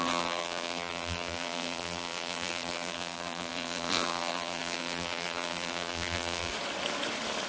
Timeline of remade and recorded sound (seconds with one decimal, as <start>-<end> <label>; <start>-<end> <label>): 0.0-6.5 remade; 6.5-7.5 recorded